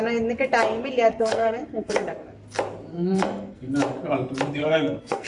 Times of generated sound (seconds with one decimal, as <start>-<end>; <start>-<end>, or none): 1.1-2.1; 2.9-3.7; 4.6-5.3